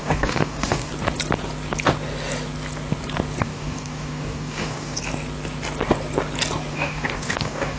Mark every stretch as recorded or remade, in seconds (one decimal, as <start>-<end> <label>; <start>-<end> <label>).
0.0-0.9 remade; 0.9-3.4 recorded; 3.4-5.1 remade; 5.1-6.7 recorded; 6.7-7.8 remade